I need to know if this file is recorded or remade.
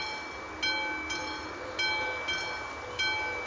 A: recorded